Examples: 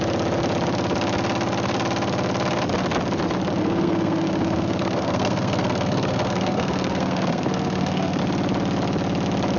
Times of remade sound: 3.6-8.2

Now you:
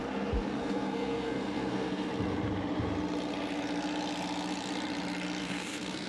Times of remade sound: 0.6-2.1; 5.4-6.1

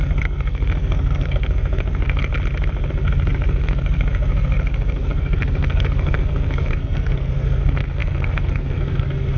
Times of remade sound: 0.0-2.3; 2.9-9.4

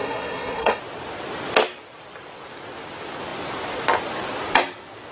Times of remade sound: 0.0-0.8